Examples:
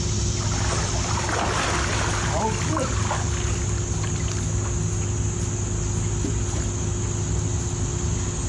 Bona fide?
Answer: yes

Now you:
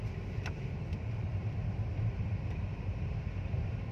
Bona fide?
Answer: no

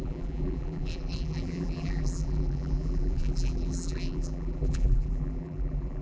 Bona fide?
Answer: no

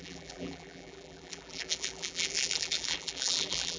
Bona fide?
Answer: no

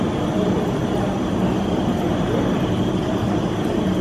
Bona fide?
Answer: no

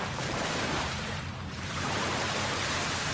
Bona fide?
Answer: no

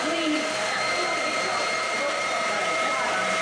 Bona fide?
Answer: no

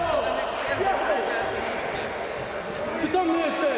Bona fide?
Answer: yes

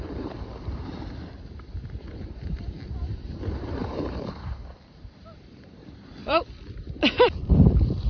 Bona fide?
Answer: no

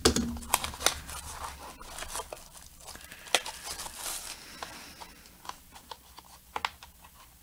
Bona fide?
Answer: yes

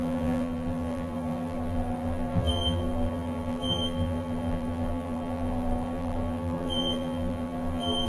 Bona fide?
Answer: no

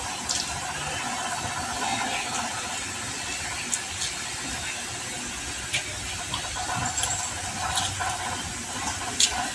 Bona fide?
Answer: yes